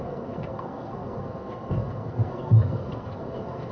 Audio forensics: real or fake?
fake